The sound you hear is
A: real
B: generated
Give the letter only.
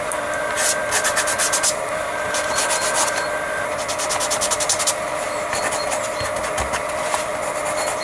A